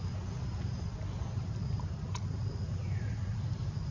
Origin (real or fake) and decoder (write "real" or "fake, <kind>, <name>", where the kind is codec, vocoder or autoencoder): real